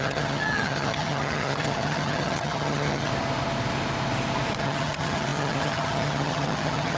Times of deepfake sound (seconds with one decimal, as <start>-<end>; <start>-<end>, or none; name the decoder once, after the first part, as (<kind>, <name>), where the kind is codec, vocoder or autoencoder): 0.0-3.1 (vocoder, HiFi-GAN); 4.6-7.0